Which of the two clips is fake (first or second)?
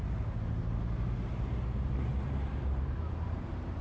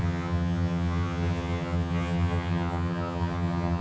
second